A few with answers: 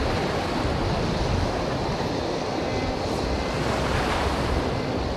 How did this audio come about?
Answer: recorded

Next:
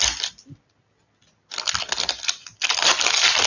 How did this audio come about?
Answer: recorded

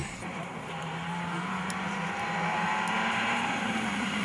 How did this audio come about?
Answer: remade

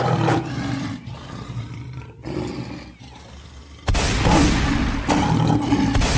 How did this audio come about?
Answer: recorded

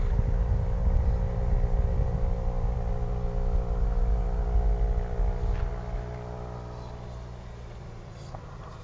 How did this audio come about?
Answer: recorded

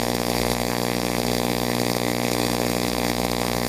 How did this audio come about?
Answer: remade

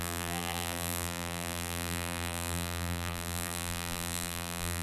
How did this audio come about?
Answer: remade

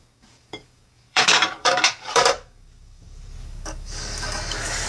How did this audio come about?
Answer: remade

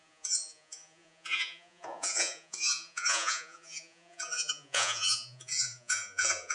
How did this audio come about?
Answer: remade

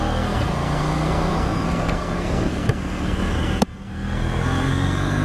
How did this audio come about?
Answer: remade